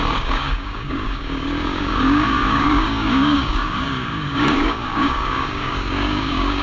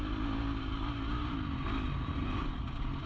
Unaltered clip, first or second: second